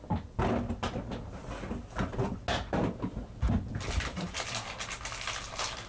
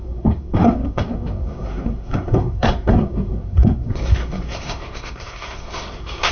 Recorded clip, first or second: first